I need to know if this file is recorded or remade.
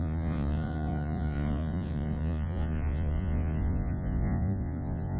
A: remade